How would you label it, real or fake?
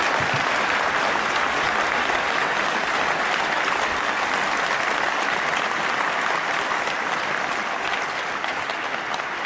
real